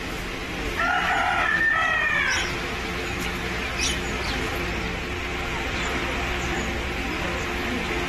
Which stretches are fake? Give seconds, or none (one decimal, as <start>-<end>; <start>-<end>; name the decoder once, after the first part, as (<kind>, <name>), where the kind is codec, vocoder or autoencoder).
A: none